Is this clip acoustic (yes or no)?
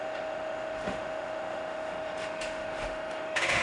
no